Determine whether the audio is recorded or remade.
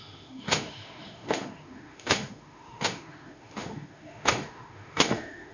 remade